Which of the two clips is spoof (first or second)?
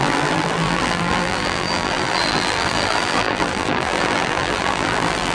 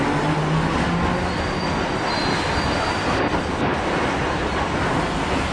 first